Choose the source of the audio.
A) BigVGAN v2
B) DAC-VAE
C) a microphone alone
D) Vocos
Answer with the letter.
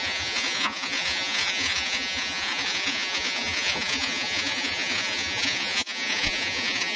D